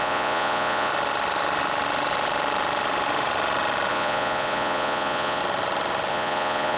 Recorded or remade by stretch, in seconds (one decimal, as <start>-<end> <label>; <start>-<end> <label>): 0.0-0.9 remade; 0.9-3.9 recorded; 3.9-5.4 remade; 5.4-6.1 recorded; 6.1-6.8 remade